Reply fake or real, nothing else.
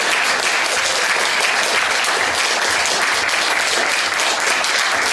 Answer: real